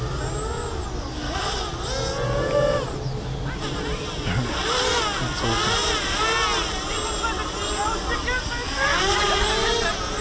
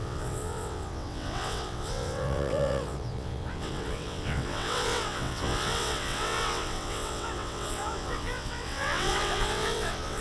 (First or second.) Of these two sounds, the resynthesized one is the second